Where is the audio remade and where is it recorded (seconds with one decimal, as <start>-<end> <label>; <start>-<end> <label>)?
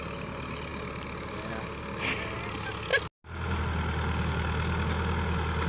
0.0-5.7 recorded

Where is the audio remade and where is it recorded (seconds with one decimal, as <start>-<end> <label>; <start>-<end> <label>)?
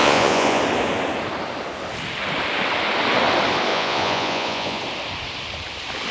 0.0-0.6 remade; 0.6-3.7 recorded; 3.7-4.8 remade; 4.8-6.1 recorded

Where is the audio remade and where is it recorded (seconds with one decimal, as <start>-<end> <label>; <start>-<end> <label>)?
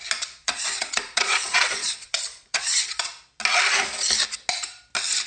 0.0-0.4 recorded; 0.4-3.1 remade; 3.1-5.3 recorded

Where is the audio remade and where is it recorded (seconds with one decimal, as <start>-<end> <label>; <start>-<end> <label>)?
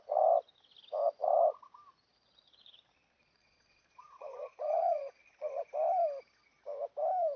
0.0-2.1 recorded; 2.1-5.6 remade; 5.6-7.4 recorded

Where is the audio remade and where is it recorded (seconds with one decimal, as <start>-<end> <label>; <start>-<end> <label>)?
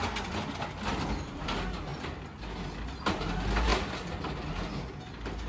0.0-5.5 recorded